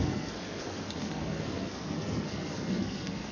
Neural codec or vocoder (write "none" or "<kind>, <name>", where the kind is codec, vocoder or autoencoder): codec, SNAC